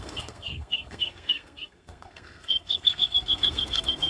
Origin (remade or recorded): remade